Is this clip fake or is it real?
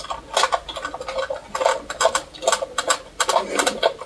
real